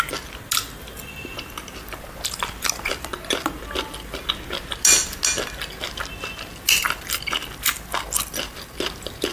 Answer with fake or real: real